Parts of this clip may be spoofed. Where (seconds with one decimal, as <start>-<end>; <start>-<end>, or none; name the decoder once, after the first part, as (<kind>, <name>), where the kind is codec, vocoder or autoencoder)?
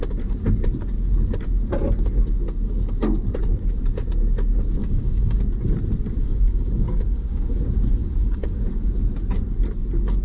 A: 4.8-5.4 (codec, DAC); 6.2-7.6; 8.0-8.6